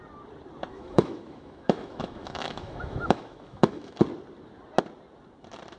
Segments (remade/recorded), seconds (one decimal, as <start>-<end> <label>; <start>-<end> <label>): 0.0-0.7 recorded; 0.7-4.0 remade; 4.0-5.8 recorded